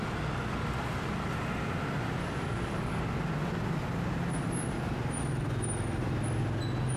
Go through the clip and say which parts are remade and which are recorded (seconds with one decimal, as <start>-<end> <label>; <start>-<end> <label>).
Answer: 0.0-2.2 recorded; 2.2-3.0 remade; 3.0-7.0 recorded